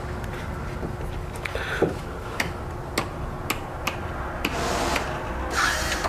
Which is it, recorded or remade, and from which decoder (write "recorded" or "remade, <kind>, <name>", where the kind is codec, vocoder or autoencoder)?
recorded